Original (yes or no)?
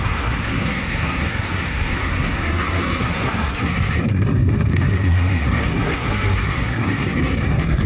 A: no